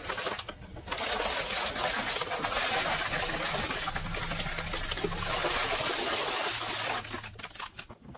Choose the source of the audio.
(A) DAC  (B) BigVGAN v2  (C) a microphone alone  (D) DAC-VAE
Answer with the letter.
C